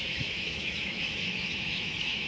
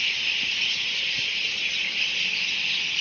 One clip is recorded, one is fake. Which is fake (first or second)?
first